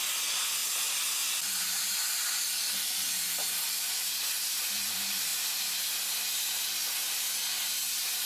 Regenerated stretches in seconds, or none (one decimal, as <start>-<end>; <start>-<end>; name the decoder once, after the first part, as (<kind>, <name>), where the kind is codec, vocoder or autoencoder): none